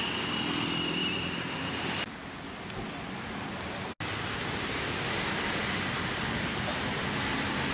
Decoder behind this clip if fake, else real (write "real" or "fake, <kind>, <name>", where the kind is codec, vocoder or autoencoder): real